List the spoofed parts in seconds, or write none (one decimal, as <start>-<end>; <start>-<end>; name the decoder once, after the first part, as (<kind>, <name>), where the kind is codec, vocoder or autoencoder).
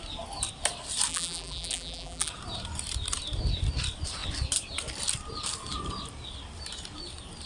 1.1-2.3 (vocoder, BigVGAN v2)